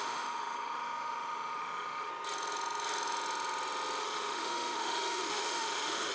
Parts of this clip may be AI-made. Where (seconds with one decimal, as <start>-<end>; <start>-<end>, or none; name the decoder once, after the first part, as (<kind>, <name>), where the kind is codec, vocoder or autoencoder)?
0.0-2.1 (autoencoder, DAC-VAE); 4.0-6.1

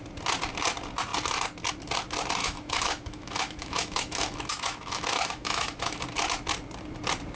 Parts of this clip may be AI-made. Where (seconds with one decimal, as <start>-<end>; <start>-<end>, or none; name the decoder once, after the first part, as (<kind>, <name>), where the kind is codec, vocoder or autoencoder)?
2.4-6.0 (autoencoder, DAC-VAE)

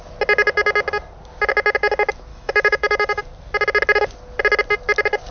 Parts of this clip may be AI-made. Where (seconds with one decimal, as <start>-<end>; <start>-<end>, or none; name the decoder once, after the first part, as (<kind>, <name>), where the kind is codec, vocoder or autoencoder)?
2.3-3.2 (autoencoder, DAC-VAE)

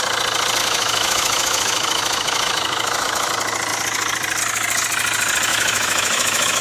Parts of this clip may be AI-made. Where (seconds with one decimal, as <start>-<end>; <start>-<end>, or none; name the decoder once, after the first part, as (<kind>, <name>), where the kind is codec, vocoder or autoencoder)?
0.6-3.3 (autoencoder, DAC-VAE); 5.5-6.6

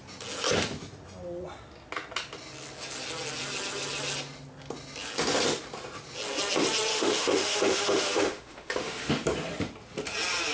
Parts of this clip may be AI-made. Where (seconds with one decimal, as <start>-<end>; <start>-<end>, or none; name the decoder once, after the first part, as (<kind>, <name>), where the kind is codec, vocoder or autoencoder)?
6.9-9.1 (autoencoder, DAC-VAE)